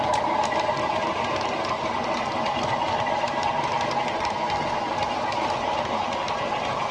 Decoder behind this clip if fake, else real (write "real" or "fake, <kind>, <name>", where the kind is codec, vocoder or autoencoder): real